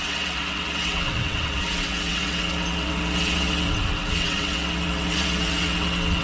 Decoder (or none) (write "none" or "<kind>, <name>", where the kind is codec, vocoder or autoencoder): vocoder, WaveNeXt